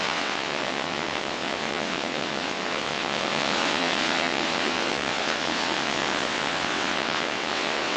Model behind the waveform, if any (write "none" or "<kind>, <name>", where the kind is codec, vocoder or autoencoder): vocoder, WaveNeXt